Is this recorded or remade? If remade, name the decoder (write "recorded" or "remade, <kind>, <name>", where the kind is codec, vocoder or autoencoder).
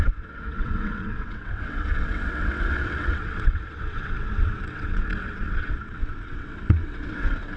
remade, vocoder, WaveNeXt